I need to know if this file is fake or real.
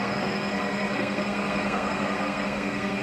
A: fake